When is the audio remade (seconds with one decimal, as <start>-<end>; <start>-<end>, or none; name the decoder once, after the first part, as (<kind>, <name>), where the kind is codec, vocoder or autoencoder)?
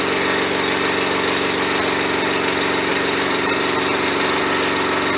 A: 2.9-4.4 (vocoder, BigVGAN v2)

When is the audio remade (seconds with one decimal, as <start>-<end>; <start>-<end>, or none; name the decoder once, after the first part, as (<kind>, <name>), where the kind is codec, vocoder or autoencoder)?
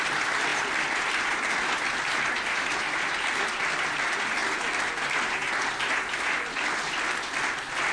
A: none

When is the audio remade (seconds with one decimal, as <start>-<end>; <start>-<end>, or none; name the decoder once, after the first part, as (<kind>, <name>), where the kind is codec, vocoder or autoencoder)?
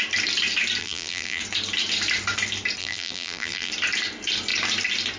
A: 0.8-1.4 (vocoder, BigVGAN v2); 2.8-3.7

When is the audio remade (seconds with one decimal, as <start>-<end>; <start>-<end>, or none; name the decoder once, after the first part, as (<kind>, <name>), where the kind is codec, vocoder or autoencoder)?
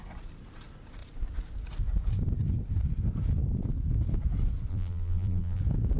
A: 4.7-5.6 (vocoder, BigVGAN v2)